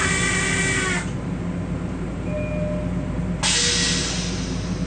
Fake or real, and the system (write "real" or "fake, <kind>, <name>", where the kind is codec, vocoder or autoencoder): real